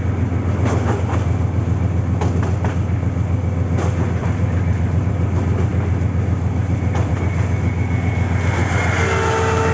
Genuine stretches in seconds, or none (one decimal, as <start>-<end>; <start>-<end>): 0.0-4.2; 5.1-9.7